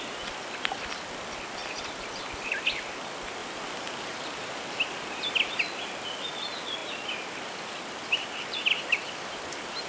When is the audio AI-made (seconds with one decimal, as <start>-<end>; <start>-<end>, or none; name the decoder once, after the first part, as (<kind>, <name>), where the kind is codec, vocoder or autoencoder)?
1.6-2.9 (vocoder, BigVGAN v2); 6.8-8.5